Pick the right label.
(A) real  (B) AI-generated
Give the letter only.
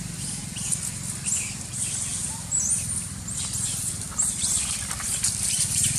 B